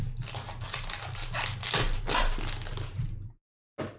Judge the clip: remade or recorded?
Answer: recorded